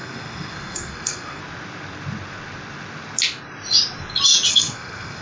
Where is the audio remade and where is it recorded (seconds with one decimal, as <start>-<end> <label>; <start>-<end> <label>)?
0.0-1.4 remade; 1.4-4.5 recorded; 4.5-5.2 remade